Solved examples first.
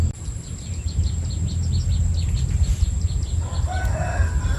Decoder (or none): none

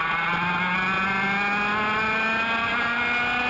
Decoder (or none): none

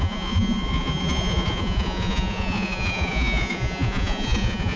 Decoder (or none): vocoder, Vocos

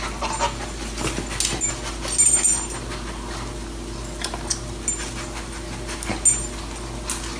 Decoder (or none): none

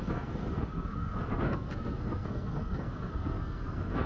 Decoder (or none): codec, SNAC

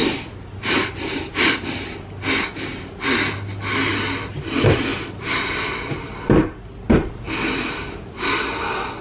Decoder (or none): none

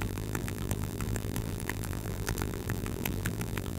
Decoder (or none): vocoder, BigVGAN v2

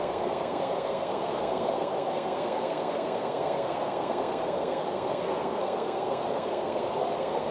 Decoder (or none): codec, SNAC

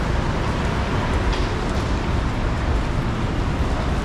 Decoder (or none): none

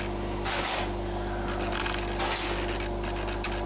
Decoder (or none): none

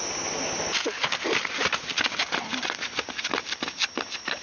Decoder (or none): none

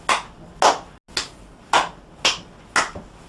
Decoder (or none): none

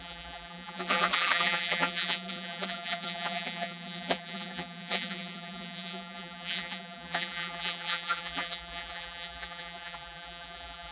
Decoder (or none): vocoder, BigVGAN v2